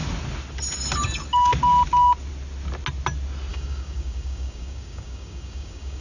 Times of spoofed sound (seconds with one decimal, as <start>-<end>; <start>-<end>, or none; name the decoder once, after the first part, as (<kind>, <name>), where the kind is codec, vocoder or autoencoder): 3.5-6.0 (codec, DAC)